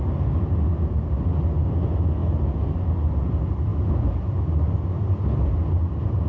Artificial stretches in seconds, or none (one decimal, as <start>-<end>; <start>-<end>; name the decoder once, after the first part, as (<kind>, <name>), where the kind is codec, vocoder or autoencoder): none

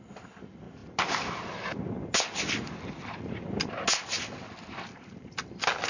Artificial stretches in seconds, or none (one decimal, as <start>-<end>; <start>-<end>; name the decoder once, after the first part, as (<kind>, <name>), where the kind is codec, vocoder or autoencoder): none

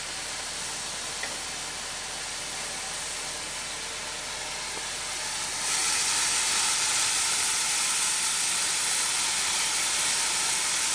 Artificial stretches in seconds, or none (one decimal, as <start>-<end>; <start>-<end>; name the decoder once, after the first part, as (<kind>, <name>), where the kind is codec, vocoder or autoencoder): none

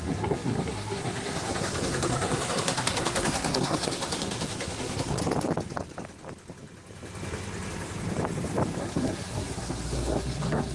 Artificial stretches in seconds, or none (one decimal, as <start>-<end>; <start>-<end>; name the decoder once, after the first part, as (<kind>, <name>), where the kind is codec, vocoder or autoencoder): 0.0-5.2 (codec, SNAC); 8.8-10.7

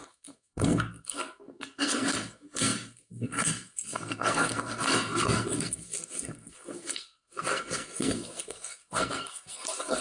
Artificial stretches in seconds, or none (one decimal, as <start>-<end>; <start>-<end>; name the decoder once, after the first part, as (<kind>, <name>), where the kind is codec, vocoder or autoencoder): 0.0-10.0 (codec, SNAC)

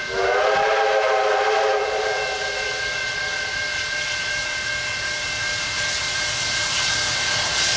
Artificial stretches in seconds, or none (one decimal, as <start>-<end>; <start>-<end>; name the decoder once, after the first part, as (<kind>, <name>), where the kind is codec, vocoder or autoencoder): none

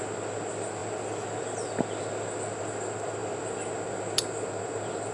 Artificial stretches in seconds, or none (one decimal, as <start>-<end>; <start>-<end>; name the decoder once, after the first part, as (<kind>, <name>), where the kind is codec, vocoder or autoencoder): none

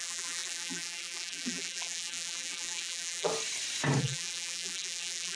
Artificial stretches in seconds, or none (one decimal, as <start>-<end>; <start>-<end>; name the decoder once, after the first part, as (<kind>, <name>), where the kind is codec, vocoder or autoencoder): 0.0-3.3 (vocoder, BigVGAN v2); 4.0-5.4